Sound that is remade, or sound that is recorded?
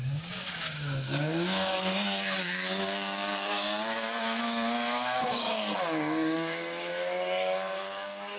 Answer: remade